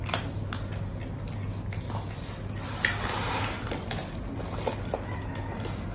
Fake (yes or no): no